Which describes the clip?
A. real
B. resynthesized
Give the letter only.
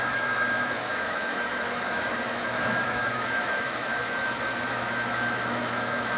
B